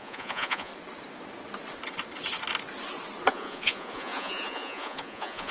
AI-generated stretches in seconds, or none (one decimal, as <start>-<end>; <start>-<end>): 0.0-0.7; 3.3-5.5